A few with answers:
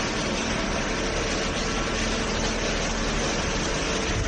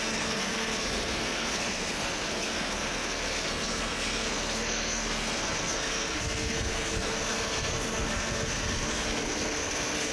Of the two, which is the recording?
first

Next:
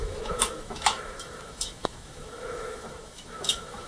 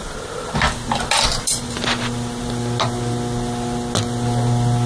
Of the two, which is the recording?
second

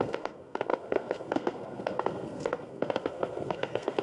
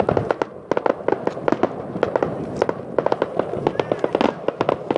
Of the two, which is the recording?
second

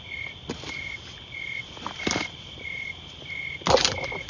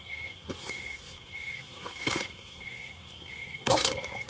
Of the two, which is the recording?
first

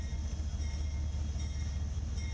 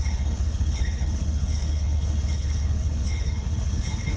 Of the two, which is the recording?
first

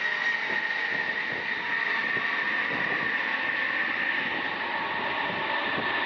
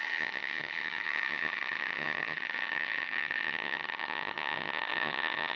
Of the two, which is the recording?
first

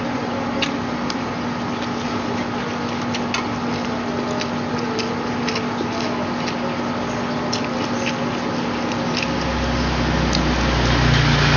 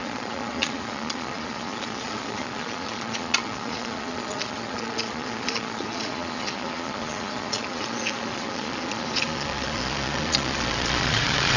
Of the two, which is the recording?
first